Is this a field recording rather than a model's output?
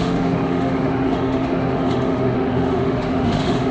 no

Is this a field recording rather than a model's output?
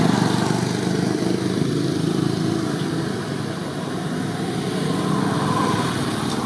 yes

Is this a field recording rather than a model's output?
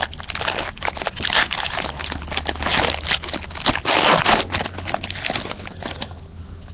yes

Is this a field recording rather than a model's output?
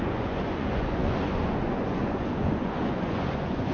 no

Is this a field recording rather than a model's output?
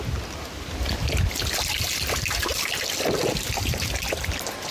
yes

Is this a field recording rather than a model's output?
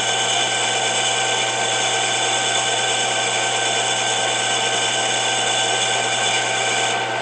yes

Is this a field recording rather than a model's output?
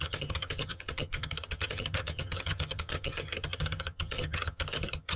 no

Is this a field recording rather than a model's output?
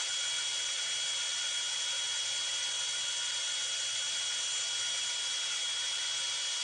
yes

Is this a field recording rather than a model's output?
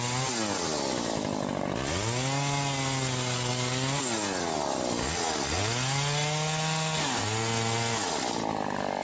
yes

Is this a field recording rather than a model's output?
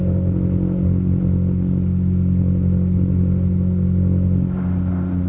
yes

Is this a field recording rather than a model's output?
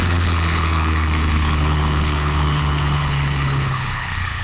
no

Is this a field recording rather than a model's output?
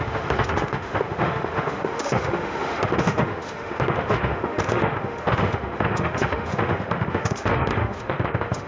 no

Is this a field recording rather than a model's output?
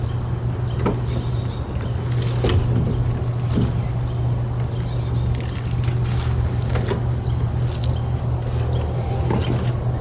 yes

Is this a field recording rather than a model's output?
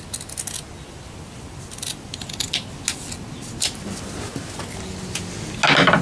yes